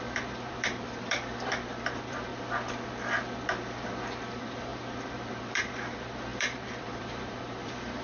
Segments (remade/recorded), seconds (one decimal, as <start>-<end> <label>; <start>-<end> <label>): 0.0-2.3 remade; 2.3-4.3 recorded; 4.3-8.0 remade